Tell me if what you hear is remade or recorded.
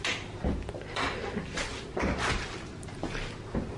recorded